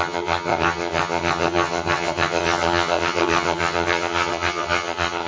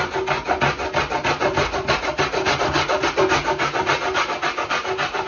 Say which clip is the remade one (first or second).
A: first